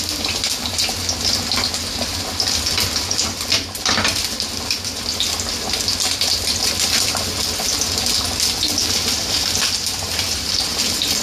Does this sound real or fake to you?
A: real